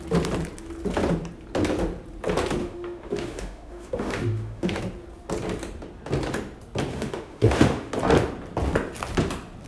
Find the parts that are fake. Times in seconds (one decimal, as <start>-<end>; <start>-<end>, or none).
2.6-4.8; 6.9-7.9